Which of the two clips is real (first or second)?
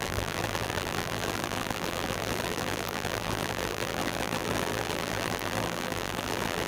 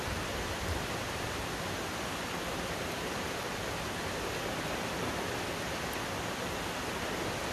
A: second